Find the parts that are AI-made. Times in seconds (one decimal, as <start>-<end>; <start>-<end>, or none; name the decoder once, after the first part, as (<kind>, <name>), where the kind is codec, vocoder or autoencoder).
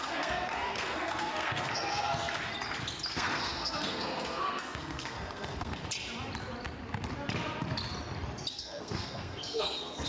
0.0-2.5 (codec, SNAC); 3.1-5.8; 8.5-10.1